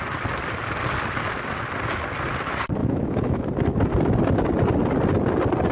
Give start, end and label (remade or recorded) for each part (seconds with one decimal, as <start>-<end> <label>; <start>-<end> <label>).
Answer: 0.0-2.8 recorded; 2.8-3.4 remade; 3.4-5.7 recorded